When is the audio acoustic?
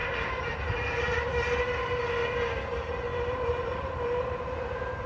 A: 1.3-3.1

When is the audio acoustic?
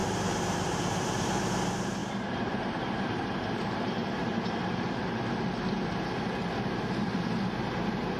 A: 1.3-2.0; 4.5-8.2